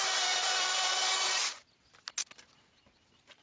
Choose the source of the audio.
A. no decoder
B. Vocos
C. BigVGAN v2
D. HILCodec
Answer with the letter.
A